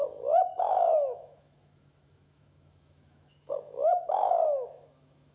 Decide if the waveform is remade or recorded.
remade